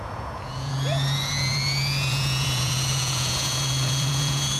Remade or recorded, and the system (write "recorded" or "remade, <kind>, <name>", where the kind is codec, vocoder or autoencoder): remade, vocoder, Vocos